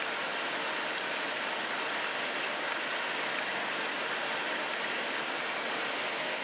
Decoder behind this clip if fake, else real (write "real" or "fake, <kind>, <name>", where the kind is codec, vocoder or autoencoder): real